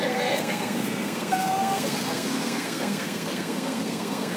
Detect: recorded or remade remade